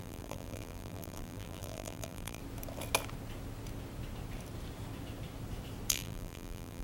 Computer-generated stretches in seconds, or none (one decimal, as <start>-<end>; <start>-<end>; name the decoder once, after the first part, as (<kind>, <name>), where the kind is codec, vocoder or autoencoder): 0.0-2.4 (vocoder, BigVGAN v2); 5.9-6.8